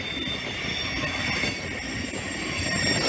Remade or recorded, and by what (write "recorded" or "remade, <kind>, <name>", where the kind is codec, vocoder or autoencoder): recorded